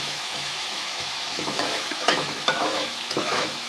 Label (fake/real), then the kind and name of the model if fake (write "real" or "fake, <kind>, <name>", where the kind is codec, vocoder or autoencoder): fake, autoencoder, DAC-VAE